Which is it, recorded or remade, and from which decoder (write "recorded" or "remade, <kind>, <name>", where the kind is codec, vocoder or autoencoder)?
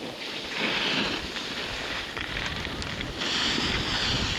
recorded